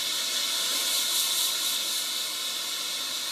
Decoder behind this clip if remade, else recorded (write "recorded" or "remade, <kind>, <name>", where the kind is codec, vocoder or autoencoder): recorded